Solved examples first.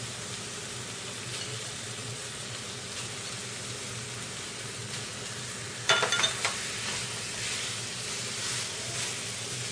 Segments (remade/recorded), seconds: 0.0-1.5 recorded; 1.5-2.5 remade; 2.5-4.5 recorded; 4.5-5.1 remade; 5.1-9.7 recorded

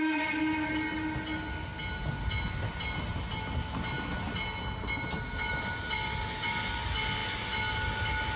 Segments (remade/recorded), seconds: 0.0-8.4 recorded